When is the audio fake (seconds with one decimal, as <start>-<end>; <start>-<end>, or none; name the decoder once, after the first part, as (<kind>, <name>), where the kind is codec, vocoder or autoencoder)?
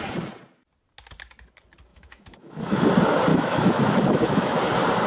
1.9-2.9 (autoencoder, DAC-VAE); 3.3-4.6